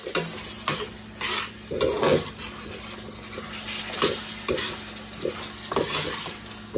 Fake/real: real